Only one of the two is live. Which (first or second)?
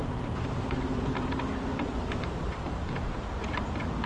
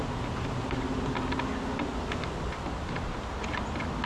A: second